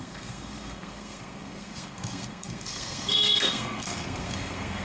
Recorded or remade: remade